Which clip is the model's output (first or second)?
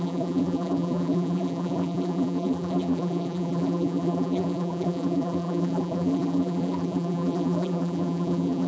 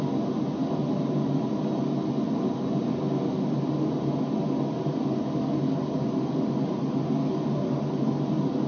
first